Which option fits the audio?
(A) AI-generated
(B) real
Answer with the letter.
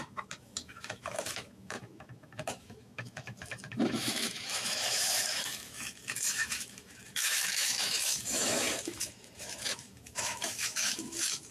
A